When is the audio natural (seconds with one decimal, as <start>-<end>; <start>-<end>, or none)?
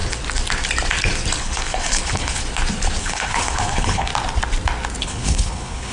0.0-1.4; 2.4-3.0; 4.1-5.0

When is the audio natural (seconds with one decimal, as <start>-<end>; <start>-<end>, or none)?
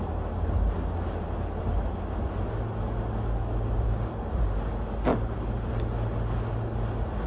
0.0-5.1; 5.7-7.3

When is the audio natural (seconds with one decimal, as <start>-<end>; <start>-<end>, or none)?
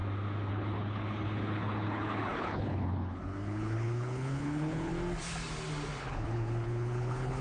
0.0-0.5; 4.9-6.0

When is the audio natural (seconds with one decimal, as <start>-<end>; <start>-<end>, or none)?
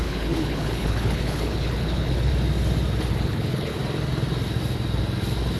2.3-3.1; 3.7-5.6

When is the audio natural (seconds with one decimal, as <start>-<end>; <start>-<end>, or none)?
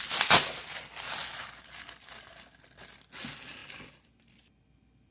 0.0-5.1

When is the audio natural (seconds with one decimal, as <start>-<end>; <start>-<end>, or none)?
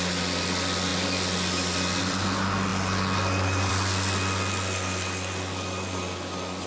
0.0-6.7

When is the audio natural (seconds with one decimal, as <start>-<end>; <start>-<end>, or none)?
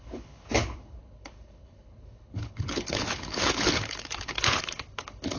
none